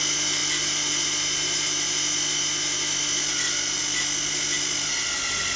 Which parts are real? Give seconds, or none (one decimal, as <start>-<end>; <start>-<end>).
0.0-5.6

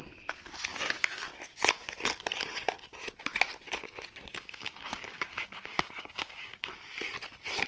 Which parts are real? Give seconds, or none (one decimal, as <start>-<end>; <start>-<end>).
0.0-0.7; 1.2-4.3; 6.7-7.7

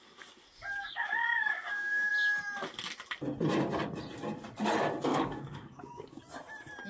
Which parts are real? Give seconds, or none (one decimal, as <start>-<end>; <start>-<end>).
0.0-0.8; 2.1-5.1; 6.2-6.9

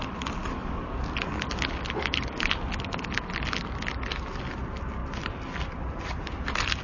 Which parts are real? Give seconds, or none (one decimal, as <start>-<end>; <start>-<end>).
0.0-0.4; 1.3-2.0; 2.6-6.8

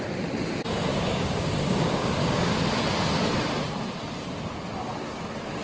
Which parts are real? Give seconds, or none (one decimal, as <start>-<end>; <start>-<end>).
0.0-0.9; 2.5-5.6